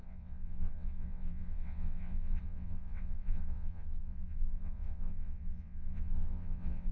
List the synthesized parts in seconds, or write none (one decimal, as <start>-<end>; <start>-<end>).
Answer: 0.0-6.9